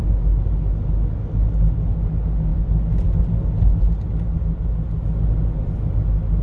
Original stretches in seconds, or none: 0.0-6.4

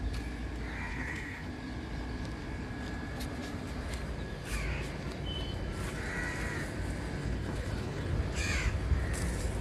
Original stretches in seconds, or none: 0.0-0.9; 1.5-7.2; 8.1-9.6

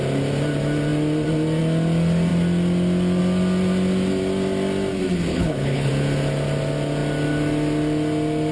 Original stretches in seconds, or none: 0.0-5.3; 5.9-8.5

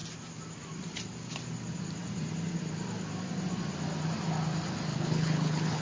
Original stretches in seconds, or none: 0.0-4.9